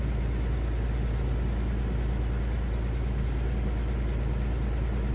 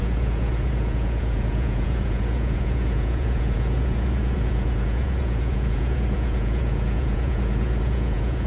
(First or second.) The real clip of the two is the first